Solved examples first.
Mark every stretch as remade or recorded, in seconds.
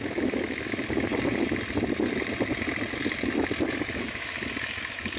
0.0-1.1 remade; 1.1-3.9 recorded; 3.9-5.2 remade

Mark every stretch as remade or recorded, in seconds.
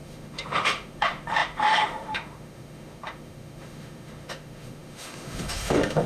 0.0-6.1 remade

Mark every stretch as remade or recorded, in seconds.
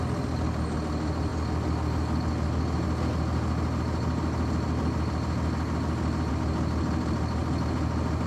0.0-8.3 recorded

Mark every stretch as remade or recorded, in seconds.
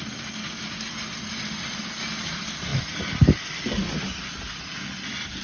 0.0-5.4 recorded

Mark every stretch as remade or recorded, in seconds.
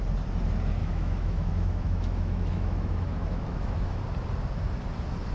0.0-0.8 recorded; 0.8-4.0 remade; 4.0-5.3 recorded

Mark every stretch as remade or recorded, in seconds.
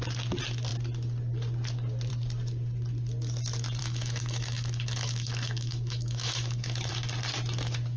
0.0-3.8 recorded; 3.8-6.9 remade; 6.9-8.0 recorded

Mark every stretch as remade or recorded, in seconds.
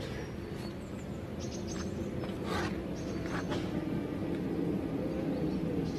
0.0-6.0 recorded